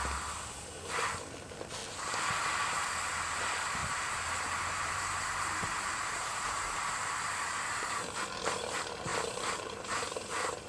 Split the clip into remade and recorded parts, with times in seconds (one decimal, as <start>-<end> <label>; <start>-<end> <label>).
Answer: 0.0-3.8 recorded; 3.8-6.9 remade; 6.9-9.1 recorded; 9.1-10.0 remade; 10.0-10.7 recorded